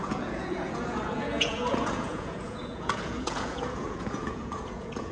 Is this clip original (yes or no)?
no